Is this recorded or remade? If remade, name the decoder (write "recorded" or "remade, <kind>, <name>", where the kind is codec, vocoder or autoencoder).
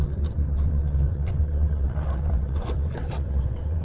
remade, vocoder, WaveNeXt